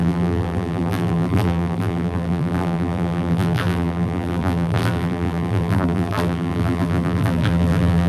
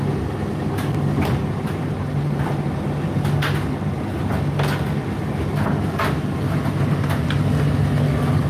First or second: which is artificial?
first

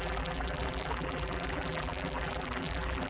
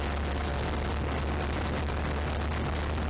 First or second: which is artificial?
first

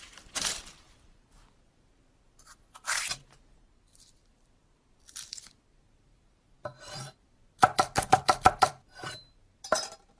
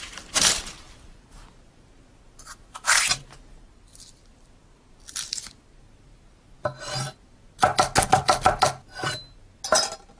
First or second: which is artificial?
first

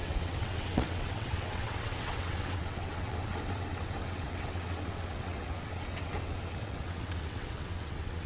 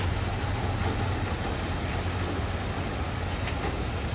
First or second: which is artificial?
first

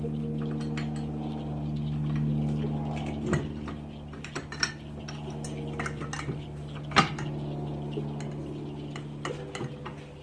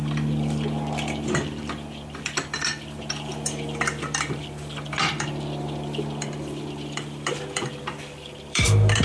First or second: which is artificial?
second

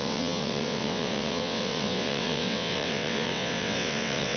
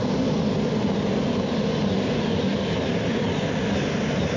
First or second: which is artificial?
first